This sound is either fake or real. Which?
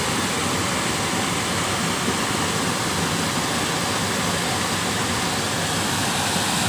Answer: real